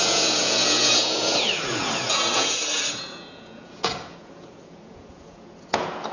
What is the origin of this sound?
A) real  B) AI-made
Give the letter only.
B